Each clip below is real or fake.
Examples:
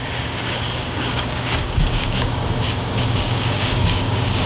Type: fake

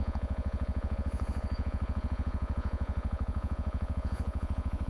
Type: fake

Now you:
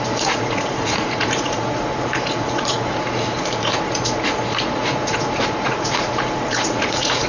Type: fake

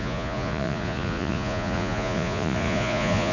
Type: fake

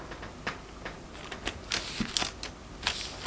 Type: real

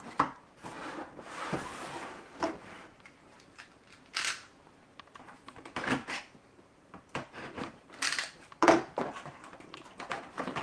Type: fake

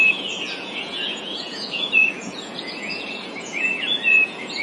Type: fake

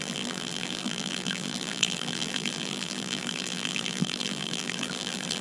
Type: fake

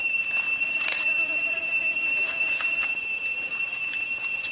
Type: fake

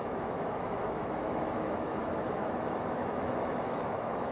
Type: fake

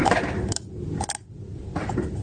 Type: fake